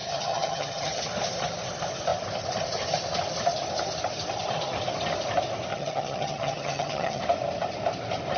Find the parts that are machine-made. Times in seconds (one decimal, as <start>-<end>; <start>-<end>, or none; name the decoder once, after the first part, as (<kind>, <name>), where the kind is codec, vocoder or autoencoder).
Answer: 0.0-1.0 (vocoder, HiFi-GAN); 5.7-7.2